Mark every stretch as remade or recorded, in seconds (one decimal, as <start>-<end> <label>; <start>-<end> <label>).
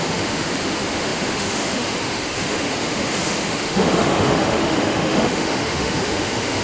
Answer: 0.0-6.6 remade